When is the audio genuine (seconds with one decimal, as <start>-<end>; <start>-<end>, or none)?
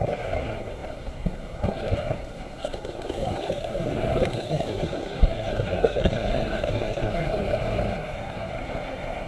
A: none